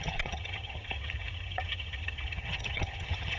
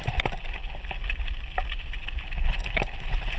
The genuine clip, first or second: second